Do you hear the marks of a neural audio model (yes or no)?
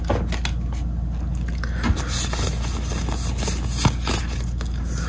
no